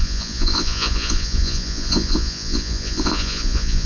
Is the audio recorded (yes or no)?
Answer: no